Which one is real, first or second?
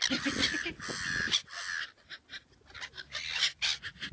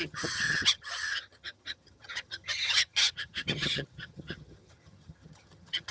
first